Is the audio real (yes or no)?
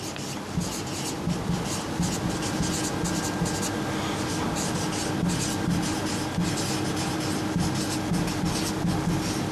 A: yes